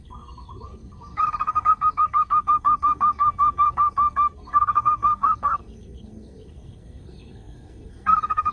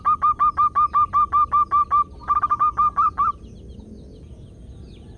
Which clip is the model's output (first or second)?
first